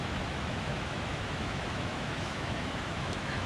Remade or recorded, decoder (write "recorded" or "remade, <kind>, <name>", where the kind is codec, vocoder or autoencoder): remade, autoencoder, DAC-VAE